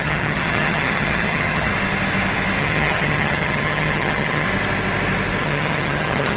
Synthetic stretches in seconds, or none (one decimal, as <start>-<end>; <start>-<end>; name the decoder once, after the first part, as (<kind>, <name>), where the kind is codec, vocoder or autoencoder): 0.0-1.7 (vocoder, HiFi-GAN); 2.6-4.5; 5.4-6.4